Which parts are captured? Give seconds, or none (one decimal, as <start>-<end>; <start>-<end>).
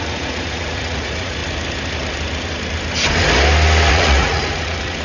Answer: 1.4-3.9